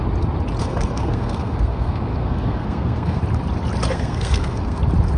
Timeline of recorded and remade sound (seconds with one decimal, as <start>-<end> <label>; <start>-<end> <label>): 0.0-0.6 recorded; 0.6-3.2 remade; 3.2-3.9 recorded; 3.9-4.8 remade; 4.8-5.2 recorded